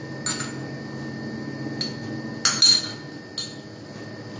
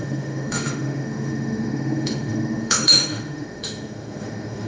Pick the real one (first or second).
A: first